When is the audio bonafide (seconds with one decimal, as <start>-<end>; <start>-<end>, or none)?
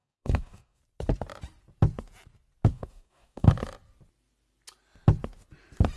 0.8-2.7; 3.5-6.0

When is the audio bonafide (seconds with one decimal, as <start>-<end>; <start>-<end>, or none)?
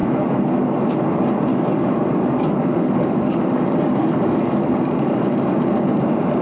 0.8-1.5; 5.3-6.4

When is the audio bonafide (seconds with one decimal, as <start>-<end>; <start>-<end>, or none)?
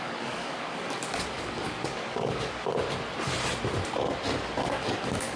2.7-4.6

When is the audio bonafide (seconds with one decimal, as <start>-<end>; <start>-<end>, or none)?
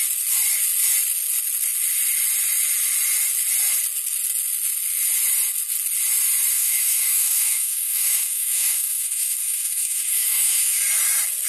0.0-6.5; 10.8-11.5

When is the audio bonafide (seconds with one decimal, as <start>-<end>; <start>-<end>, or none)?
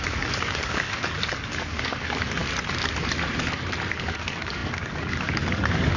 2.4-3.9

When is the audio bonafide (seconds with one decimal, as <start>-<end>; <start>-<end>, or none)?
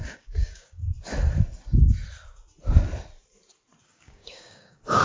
0.8-3.8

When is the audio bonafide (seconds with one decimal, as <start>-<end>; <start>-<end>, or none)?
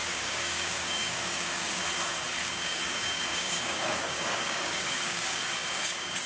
1.8-2.4